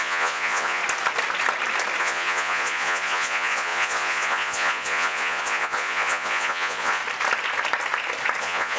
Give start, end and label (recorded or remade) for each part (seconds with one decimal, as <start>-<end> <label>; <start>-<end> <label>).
0.0-0.8 remade; 0.8-2.0 recorded; 2.0-7.0 remade; 7.0-8.4 recorded; 8.4-8.8 remade